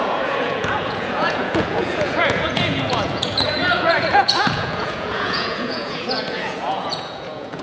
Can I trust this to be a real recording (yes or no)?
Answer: no